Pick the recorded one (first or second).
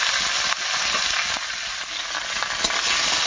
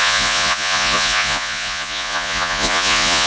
first